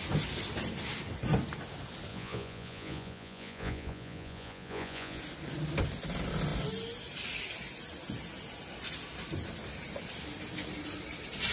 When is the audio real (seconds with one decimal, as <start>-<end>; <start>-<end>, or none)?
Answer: 0.0-2.1; 5.2-11.5

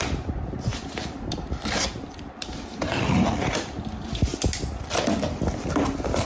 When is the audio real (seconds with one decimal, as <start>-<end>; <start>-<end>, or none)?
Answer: 0.0-0.7; 3.1-6.2

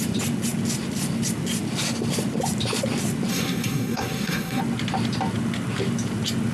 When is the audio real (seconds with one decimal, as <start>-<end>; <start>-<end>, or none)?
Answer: 0.0-3.3; 4.6-6.5

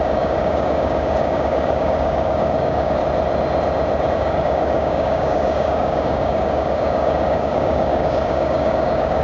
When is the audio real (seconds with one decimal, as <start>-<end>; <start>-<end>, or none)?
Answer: 3.0-4.1